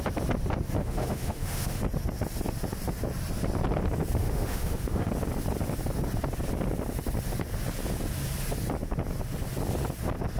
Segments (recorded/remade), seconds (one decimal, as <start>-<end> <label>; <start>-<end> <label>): 0.0-0.8 recorded; 0.8-1.8 remade; 1.8-4.2 recorded; 4.2-5.1 remade; 5.1-10.4 recorded